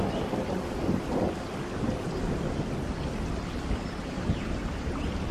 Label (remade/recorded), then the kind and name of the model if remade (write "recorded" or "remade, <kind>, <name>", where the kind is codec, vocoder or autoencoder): recorded